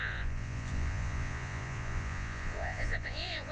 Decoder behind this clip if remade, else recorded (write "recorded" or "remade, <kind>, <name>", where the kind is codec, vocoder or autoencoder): remade, vocoder, Vocos